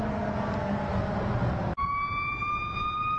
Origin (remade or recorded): recorded